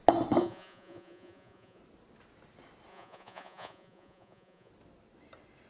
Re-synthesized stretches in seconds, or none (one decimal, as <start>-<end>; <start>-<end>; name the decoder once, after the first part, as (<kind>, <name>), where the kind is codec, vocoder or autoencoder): 0.4-1.8 (vocoder, Vocos); 2.9-4.7